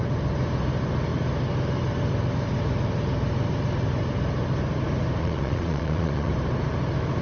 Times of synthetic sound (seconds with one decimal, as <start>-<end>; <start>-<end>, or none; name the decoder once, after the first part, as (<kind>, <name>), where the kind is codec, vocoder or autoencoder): 5.2-6.3 (vocoder, Vocos)